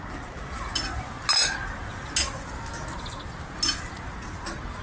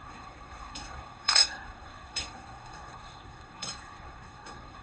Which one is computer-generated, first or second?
second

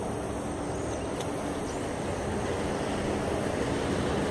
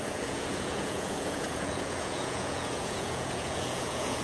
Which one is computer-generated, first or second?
second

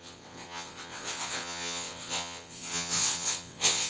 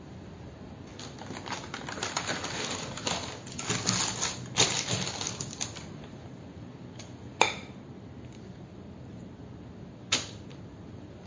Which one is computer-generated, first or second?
first